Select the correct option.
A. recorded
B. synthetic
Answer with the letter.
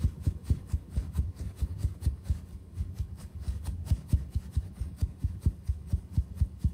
B